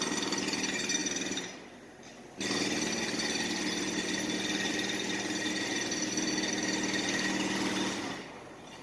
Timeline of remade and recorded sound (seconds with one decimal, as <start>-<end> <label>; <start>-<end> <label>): 0.0-8.8 recorded